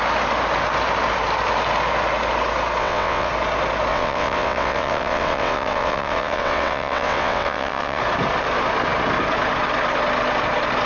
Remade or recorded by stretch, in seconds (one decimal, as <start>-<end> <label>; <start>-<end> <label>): 0.0-2.8 recorded; 2.8-3.3 remade; 3.3-3.9 recorded; 3.9-8.0 remade; 8.0-10.9 recorded

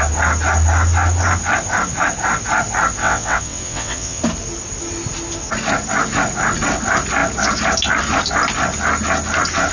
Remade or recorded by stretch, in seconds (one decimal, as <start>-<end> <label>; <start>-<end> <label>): 0.0-3.0 recorded; 3.0-4.2 remade; 4.2-9.7 recorded

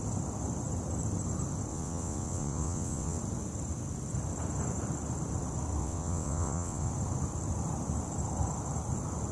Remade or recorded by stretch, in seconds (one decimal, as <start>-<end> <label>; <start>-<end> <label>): 0.0-1.7 recorded; 1.7-3.2 remade; 3.2-5.8 recorded; 5.8-6.9 remade; 6.9-9.3 recorded

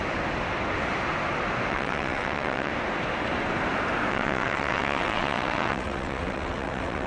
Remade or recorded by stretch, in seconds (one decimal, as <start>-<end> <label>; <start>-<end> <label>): 0.0-1.7 recorded; 1.7-2.7 remade; 2.7-4.1 recorded; 4.1-7.1 remade